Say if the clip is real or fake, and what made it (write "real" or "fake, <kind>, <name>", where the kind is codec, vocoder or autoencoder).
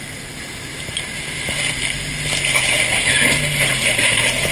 real